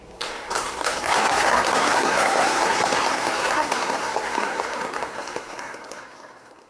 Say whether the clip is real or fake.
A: fake